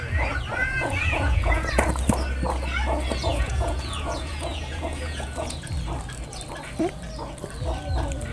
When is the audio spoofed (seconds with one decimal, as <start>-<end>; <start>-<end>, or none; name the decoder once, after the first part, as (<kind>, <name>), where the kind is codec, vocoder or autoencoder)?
0.6-1.9 (vocoder, Vocos); 3.3-5.7